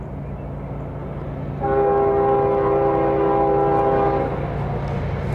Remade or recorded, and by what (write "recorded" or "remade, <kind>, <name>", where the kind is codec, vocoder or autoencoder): recorded